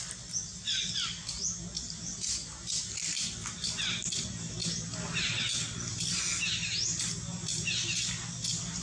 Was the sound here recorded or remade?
recorded